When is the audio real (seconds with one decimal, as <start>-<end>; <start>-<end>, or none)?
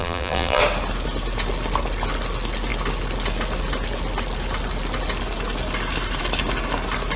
0.6-7.2